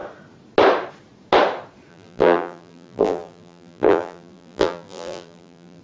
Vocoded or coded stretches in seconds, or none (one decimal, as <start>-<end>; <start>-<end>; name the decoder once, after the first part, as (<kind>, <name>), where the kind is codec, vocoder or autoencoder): 1.9-5.8 (vocoder, BigVGAN v2)